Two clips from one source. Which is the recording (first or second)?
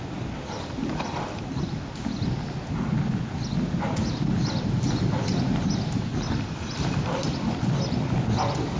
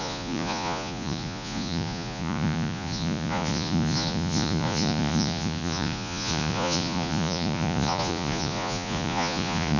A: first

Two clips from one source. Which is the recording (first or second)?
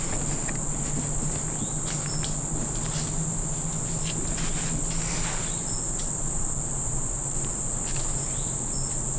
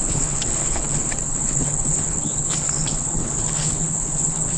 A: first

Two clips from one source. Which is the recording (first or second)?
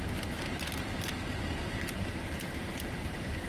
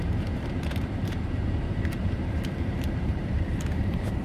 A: first